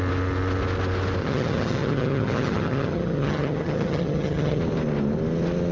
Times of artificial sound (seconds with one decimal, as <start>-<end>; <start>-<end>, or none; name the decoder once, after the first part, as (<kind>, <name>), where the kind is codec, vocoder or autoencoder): 1.2-4.6 (vocoder, HiFi-GAN)